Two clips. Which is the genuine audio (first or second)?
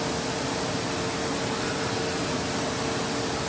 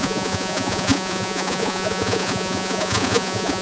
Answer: first